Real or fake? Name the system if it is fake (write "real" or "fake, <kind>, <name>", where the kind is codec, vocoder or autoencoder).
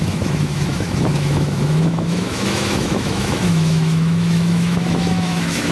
fake, autoencoder, DAC-VAE